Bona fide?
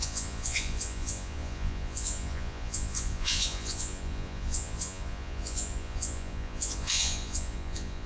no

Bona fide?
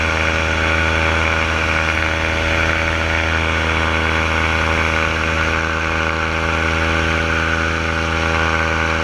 yes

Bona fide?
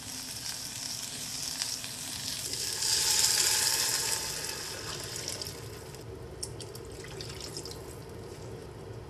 yes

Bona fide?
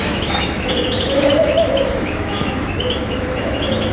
no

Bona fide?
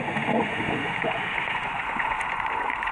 no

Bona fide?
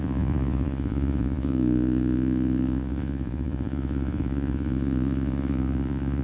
no